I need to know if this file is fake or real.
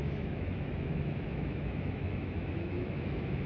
fake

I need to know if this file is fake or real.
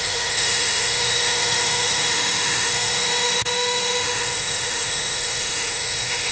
fake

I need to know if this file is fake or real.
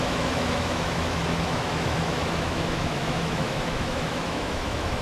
fake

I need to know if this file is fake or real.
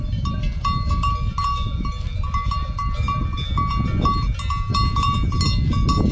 real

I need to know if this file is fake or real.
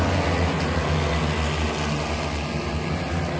real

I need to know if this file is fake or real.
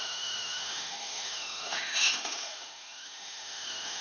fake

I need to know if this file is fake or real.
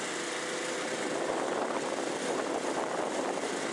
real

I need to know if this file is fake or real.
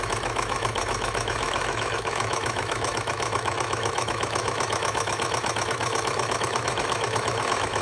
fake